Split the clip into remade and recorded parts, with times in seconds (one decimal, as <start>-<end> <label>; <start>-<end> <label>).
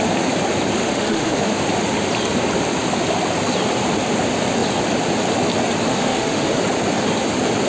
0.0-0.8 recorded; 0.8-1.6 remade; 1.6-5.9 recorded; 5.9-6.6 remade; 6.6-7.7 recorded